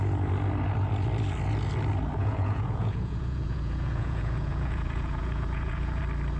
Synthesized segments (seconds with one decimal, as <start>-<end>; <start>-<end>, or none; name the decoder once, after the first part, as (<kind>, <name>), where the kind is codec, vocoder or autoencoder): 2.2-6.0 (vocoder, Vocos)

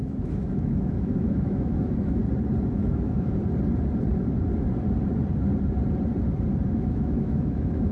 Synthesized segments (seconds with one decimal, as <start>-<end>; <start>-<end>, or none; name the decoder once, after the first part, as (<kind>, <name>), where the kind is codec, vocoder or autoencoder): 0.0-2.2 (autoencoder, DAC-VAE); 2.7-3.4; 6.7-7.9